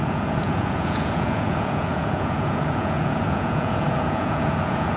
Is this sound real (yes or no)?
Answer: no